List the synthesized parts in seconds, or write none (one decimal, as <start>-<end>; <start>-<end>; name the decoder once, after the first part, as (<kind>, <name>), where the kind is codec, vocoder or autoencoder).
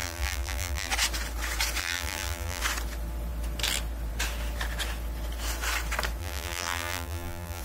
0.0-0.9 (vocoder, BigVGAN v2); 1.8-2.6; 6.2-7.6